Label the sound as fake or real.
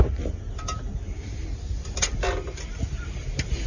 real